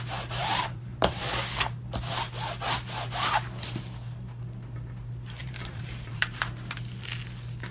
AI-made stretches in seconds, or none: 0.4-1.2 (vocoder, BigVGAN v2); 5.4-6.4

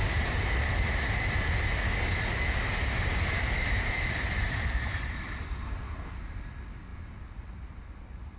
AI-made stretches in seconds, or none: none

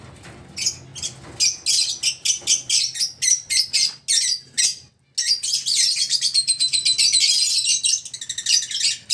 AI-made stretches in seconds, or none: 5.6-6.5 (vocoder, BigVGAN v2)